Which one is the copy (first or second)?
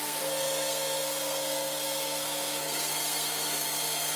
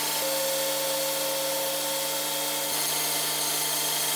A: first